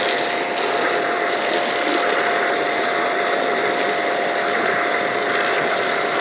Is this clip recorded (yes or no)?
yes